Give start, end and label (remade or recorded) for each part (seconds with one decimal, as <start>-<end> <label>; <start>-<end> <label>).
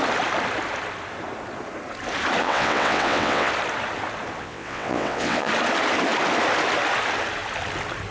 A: 0.0-2.4 recorded; 2.4-3.5 remade; 3.5-4.4 recorded; 4.4-5.5 remade; 5.5-8.1 recorded